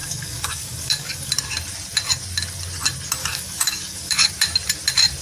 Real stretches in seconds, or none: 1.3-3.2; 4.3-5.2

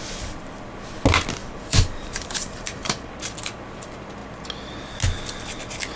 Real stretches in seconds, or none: 0.0-1.4; 3.1-6.0

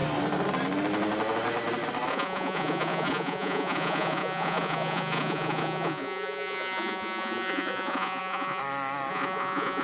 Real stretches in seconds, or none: 0.0-2.1; 8.6-9.1

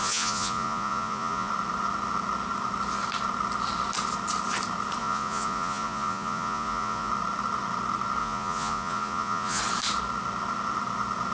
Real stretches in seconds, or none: 1.5-5.0; 7.1-8.2; 9.6-11.3